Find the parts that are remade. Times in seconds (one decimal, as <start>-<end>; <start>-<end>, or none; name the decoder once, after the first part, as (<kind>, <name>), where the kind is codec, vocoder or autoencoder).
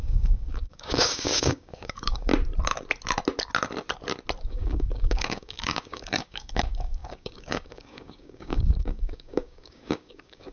0.0-2.3 (codec, DAC); 4.4-10.5